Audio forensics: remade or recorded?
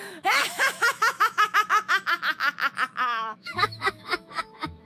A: remade